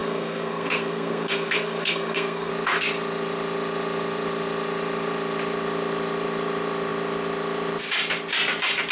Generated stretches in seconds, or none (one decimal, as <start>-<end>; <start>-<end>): 0.0-2.5